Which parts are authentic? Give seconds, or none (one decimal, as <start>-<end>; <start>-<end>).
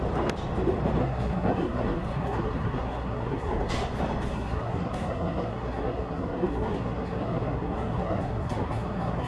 0.0-1.0; 3.7-4.3